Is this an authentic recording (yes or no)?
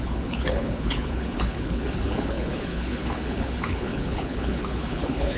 no